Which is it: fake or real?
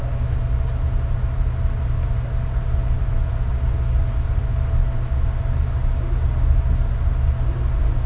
real